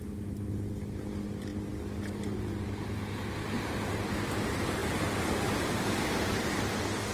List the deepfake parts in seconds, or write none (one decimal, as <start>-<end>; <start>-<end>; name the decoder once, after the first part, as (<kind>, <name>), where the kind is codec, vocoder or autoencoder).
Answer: none